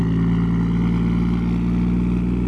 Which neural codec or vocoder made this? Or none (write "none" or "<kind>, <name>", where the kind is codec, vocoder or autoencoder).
none